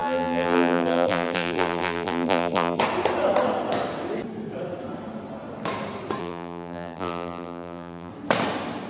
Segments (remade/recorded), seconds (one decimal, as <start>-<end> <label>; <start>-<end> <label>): 0.0-2.8 remade; 2.8-6.2 recorded; 6.2-8.1 remade; 8.1-8.9 recorded

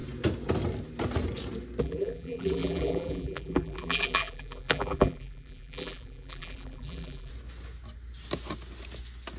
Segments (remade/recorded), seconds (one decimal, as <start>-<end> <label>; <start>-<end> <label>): 0.0-1.8 recorded; 1.8-7.3 remade; 7.3-9.4 recorded

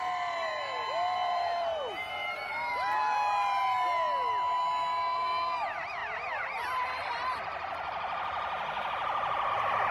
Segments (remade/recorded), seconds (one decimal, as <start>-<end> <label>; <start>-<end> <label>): 0.0-2.2 recorded; 2.2-3.0 remade; 3.0-9.9 recorded

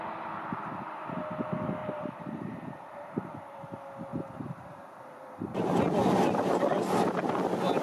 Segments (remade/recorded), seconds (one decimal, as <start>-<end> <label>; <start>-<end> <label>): 0.0-1.8 recorded; 1.8-3.6 remade; 3.6-4.1 recorded; 4.1-5.9 remade; 5.9-7.8 recorded

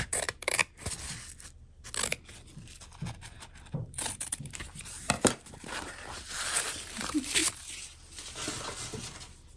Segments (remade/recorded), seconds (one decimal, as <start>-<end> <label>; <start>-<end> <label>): 0.0-0.6 remade; 0.6-3.2 recorded; 3.2-7.4 remade; 7.4-9.6 recorded

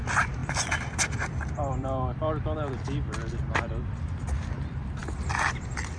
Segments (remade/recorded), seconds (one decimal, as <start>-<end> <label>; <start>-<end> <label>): 0.0-6.0 remade